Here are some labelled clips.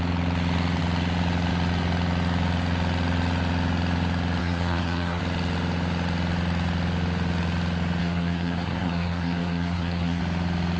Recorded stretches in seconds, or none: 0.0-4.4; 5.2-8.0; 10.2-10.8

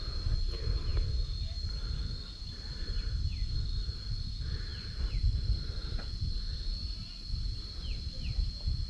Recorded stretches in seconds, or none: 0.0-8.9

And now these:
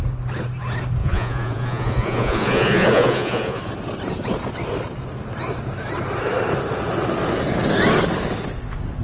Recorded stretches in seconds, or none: 0.0-1.0; 3.6-9.0